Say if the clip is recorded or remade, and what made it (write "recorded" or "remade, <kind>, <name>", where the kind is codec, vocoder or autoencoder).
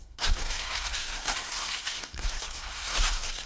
remade, codec, SNAC